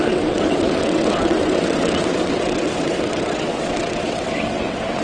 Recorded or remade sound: remade